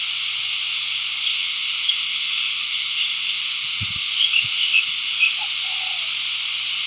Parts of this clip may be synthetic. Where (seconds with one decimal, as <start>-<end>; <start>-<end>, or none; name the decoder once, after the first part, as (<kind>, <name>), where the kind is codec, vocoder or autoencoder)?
1.3-5.4 (autoencoder, DAC-VAE)

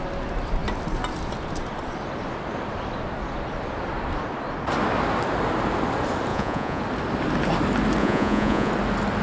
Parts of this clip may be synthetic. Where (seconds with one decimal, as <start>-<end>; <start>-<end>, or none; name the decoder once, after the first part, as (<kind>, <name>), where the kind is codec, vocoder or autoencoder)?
6.3-6.8 (vocoder, Vocos); 8.0-8.7

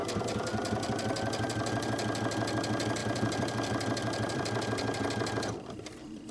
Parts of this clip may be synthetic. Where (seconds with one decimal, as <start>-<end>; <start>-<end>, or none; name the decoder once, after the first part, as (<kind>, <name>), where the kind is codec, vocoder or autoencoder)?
0.0-0.9 (vocoder, BigVGAN v2); 3.0-6.3

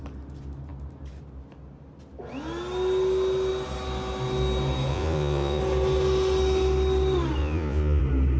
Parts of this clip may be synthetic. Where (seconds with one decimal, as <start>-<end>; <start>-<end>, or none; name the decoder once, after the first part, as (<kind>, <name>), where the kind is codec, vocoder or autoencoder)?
4.9-5.6 (vocoder, Vocos); 7.4-8.0

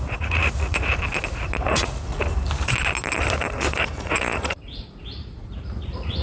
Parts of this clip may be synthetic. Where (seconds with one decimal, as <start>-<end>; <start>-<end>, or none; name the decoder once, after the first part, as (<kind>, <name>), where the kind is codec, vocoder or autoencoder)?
0.0-0.9 (vocoder, Vocos); 1.7-2.3; 4.0-6.2

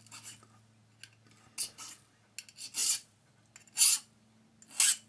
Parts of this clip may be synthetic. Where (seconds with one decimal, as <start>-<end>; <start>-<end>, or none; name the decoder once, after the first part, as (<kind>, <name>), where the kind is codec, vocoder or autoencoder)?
2.8-3.3 (vocoder, BigVGAN v2)

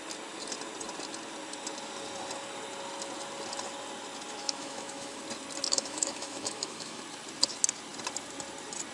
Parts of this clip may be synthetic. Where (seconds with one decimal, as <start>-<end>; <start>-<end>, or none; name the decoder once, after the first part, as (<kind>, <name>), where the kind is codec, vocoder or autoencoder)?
4.4-5.2 (autoencoder, DAC-VAE); 5.7-7.0